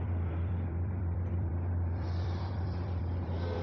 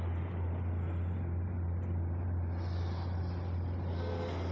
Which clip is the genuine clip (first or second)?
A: second